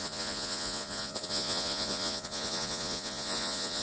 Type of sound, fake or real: fake